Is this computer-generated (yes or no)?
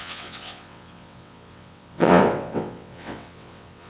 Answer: yes